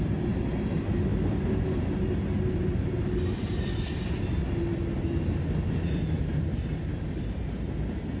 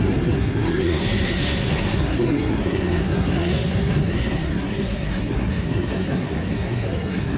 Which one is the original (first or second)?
first